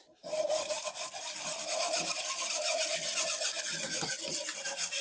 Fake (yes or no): yes